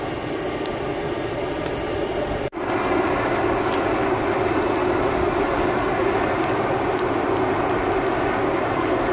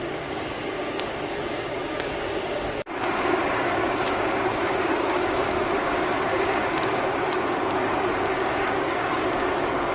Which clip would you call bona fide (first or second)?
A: first